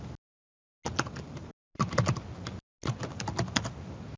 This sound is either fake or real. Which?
real